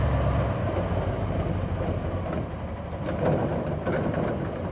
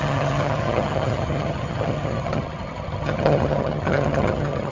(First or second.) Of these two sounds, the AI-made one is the second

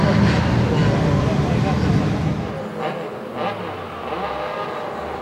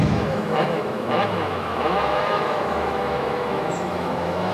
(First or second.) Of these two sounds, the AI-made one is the second